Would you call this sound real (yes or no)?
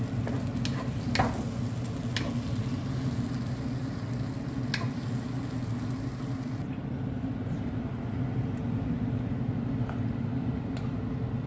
yes